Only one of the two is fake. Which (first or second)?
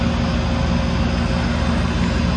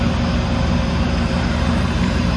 second